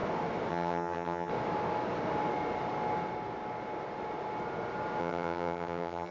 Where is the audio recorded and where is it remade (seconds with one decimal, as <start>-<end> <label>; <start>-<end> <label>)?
0.0-0.5 recorded; 0.5-1.3 remade; 1.3-5.0 recorded; 5.0-6.1 remade